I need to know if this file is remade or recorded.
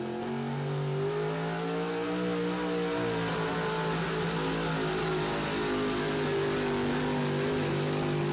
recorded